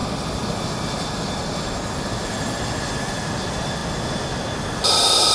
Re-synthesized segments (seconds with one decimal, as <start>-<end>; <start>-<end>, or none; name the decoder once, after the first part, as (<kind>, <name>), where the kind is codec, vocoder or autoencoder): none